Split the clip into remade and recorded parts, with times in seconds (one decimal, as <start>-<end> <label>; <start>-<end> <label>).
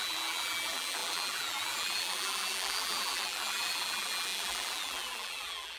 0.0-5.8 remade